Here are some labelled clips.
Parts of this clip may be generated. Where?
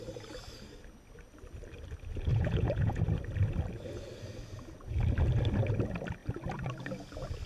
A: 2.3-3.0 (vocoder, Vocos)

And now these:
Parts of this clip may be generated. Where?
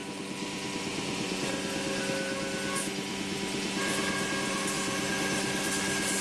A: 0.9-1.5 (vocoder, Vocos)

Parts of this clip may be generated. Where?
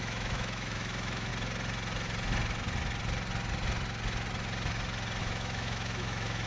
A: 0.0-1.3 (autoencoder, DAC-VAE); 5.2-6.5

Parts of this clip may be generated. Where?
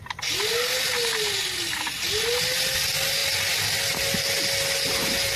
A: none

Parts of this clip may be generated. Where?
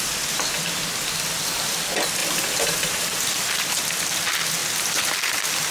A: 2.2-3.5 (vocoder, BigVGAN v2)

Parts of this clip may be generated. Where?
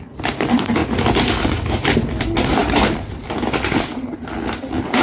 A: none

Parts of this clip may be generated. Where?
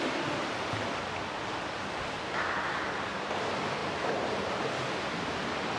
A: none